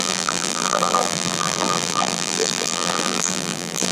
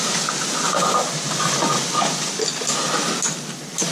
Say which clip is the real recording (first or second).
second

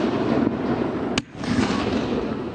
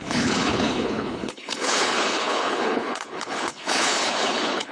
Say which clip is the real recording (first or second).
first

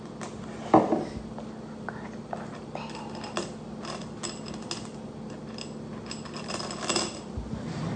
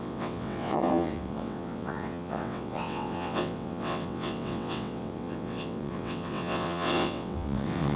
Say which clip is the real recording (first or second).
first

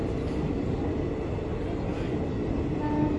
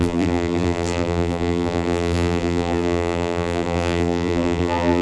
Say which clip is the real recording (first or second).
first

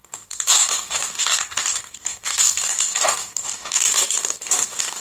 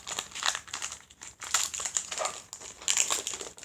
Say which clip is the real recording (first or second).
second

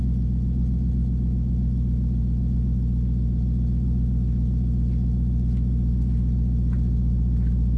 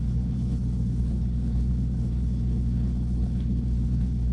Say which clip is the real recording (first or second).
first